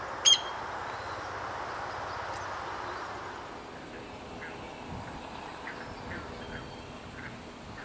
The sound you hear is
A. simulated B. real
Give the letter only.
B